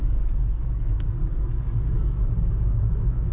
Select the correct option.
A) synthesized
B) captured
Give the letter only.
A